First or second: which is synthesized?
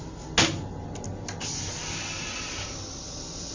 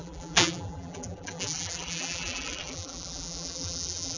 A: second